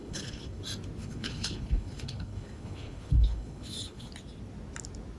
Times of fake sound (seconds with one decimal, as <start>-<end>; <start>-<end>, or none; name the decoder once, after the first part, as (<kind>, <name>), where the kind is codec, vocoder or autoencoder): 0.0-0.6 (codec, HILCodec); 1.0-4.1